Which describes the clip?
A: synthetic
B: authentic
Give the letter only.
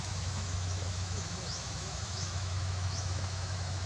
A